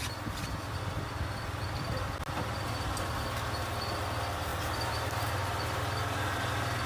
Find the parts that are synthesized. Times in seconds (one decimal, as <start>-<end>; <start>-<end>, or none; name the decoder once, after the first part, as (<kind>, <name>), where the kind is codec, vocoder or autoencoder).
0.0-1.6 (vocoder, BigVGAN v2); 4.5-5.3